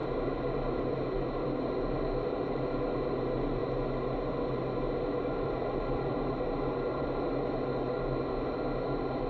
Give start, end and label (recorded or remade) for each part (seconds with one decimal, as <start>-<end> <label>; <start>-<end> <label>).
0.0-9.3 recorded